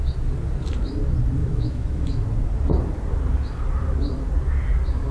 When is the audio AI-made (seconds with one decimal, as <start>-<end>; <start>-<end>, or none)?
1.4-2.0